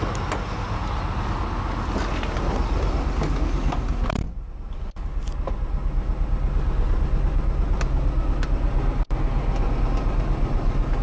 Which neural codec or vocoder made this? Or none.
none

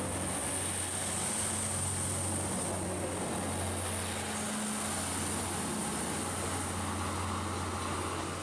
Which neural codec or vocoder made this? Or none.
none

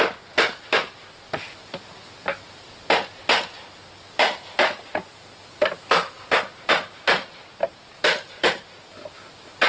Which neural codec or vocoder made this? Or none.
none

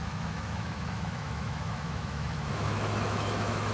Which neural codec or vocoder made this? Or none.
autoencoder, DAC-VAE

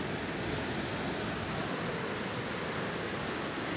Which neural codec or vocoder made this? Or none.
none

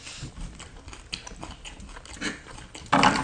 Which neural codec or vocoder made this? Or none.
none